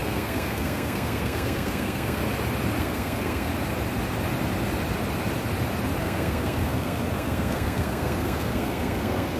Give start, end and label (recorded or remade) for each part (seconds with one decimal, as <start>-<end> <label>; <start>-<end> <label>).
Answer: 0.0-2.2 remade; 2.2-2.8 recorded; 2.8-3.5 remade; 3.5-6.0 recorded; 6.0-9.4 remade